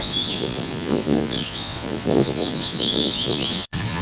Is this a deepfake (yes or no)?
yes